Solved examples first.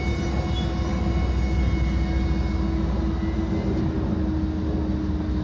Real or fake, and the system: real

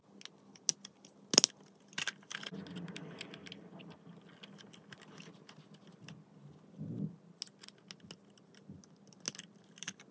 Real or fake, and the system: real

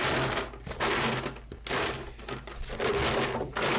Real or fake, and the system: real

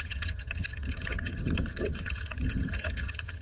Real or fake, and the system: fake, vocoder, HiFi-GAN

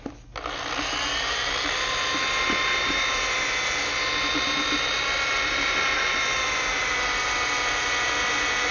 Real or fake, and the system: real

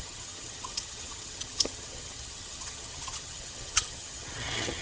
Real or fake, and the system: fake, vocoder, HiFi-GAN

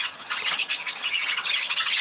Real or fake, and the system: fake, vocoder, HiFi-GAN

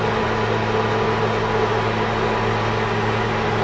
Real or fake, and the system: real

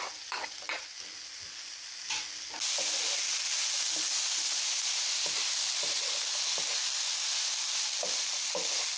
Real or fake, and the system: real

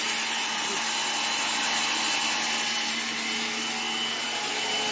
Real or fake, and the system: real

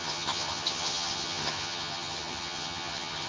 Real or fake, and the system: fake, vocoder, HiFi-GAN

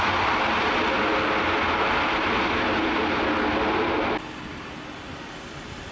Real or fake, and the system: real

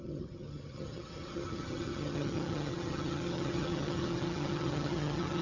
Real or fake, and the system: fake, vocoder, HiFi-GAN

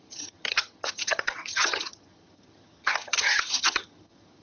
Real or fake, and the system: fake, vocoder, HiFi-GAN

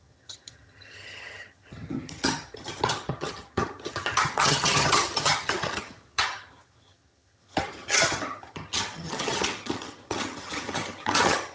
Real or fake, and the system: fake, vocoder, HiFi-GAN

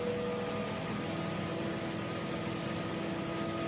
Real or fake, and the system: real